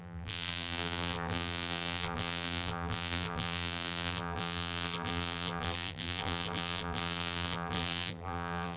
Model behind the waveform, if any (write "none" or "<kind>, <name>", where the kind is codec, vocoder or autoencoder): vocoder, BigVGAN v2